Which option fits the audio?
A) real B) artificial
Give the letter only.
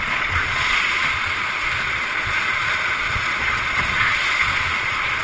B